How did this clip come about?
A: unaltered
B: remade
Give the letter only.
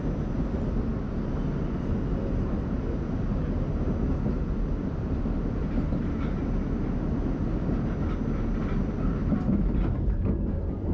A